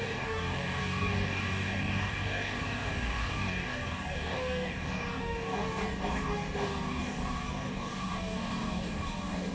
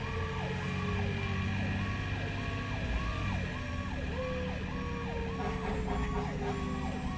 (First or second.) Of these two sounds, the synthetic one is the first